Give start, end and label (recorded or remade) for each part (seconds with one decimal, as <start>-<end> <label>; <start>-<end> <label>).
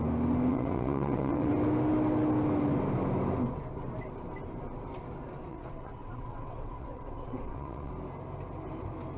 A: 0.0-0.5 recorded; 0.5-1.5 remade; 1.5-5.5 recorded; 5.5-7.9 remade; 7.9-9.2 recorded